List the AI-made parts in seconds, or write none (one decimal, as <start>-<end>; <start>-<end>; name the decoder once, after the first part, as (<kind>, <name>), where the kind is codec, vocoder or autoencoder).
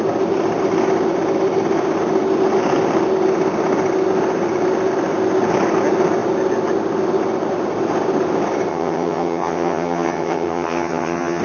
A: 8.7-11.4 (vocoder, HiFi-GAN)